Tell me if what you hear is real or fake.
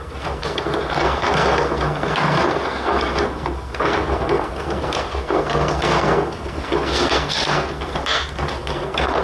fake